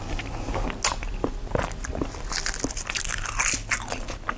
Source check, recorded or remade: recorded